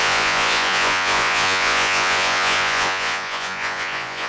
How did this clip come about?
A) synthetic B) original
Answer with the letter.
A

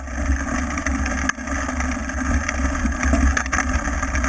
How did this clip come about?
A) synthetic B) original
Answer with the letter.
B